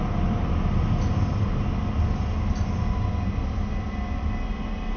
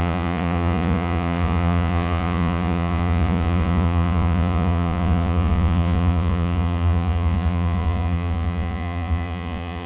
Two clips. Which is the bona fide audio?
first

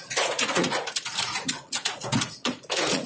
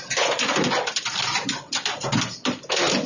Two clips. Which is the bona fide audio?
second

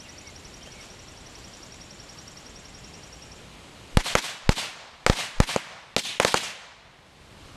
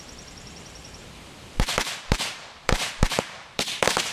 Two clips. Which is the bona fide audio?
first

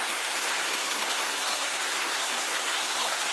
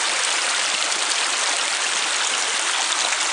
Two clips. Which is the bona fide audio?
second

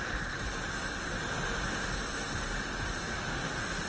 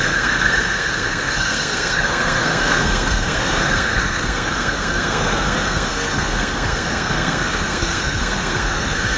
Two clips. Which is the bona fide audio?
first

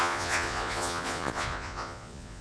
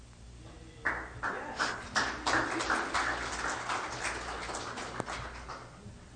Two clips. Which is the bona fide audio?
second